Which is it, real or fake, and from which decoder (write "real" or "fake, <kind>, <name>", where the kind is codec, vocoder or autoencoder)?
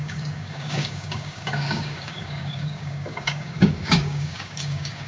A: fake, codec, DAC